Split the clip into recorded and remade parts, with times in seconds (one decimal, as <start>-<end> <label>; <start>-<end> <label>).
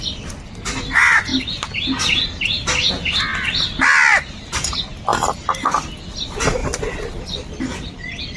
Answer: 0.0-8.4 recorded